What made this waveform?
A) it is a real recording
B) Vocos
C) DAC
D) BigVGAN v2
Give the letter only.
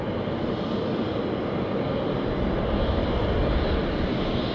A